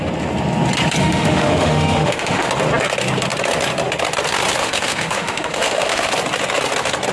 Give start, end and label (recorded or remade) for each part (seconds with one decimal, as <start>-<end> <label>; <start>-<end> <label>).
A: 0.0-1.0 recorded; 1.0-2.5 remade; 2.5-4.6 recorded; 4.6-6.1 remade; 6.1-7.1 recorded